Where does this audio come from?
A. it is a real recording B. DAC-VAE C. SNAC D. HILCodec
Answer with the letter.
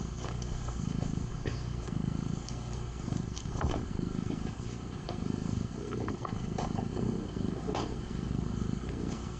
C